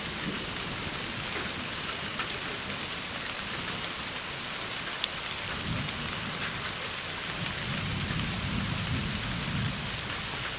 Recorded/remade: recorded